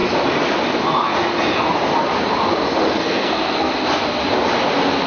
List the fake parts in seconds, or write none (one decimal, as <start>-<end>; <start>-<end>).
2.9-3.7